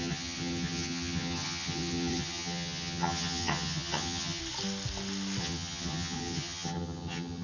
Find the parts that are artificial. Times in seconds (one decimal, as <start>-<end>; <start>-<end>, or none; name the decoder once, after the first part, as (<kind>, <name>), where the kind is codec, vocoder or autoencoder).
0.0-4.4 (vocoder, HiFi-GAN); 5.4-7.4